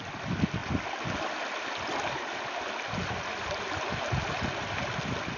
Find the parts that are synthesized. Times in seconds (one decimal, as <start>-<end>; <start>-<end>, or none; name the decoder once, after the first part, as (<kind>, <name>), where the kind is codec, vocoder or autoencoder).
none